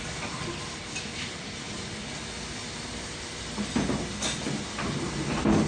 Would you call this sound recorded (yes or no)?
yes